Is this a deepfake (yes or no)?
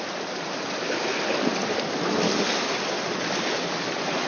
no